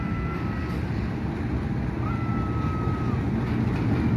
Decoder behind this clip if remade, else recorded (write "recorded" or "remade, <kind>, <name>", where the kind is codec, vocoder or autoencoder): recorded